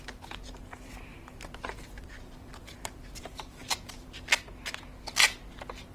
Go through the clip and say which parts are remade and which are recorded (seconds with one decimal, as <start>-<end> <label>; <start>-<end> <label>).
0.0-0.7 recorded; 0.7-4.2 remade; 4.2-5.9 recorded